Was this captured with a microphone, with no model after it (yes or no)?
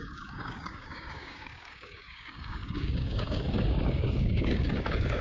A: no